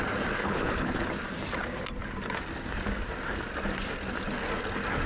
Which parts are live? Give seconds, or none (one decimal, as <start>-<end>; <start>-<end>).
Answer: 0.0-0.4; 1.1-5.1